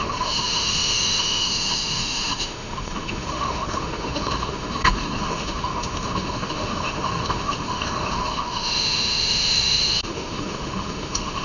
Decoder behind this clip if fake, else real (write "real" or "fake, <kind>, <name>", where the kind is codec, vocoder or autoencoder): fake, autoencoder, DAC-VAE